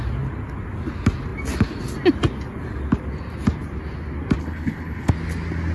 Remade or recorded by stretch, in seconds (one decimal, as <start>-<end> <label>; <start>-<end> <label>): 0.0-4.4 recorded; 4.4-5.1 remade; 5.1-5.7 recorded